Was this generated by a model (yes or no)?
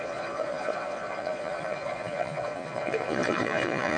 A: yes